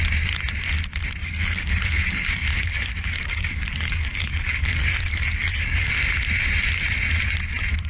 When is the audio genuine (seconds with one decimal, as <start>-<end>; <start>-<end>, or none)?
0.0-1.2; 5.9-7.9